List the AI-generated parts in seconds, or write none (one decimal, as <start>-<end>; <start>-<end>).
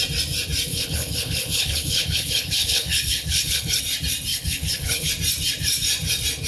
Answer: 0.7-3.8; 4.3-5.1